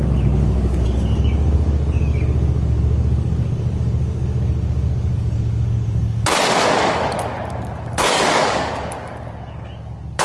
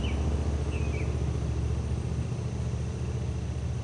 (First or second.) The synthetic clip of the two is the first